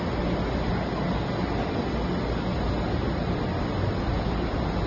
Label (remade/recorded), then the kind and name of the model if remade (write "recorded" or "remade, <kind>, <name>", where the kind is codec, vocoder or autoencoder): recorded